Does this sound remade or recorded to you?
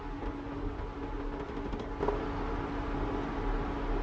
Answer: recorded